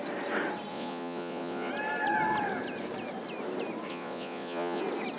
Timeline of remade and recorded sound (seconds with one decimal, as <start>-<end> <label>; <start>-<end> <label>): 0.0-0.7 recorded; 0.7-1.7 remade; 1.7-3.9 recorded; 3.9-4.8 remade; 4.8-5.2 recorded